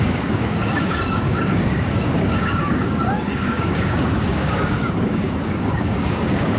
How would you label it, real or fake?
fake